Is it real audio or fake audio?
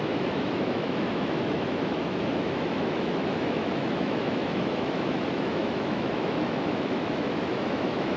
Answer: fake